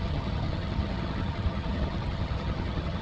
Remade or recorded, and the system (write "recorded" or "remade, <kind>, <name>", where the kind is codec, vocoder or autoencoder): remade, vocoder, HiFi-GAN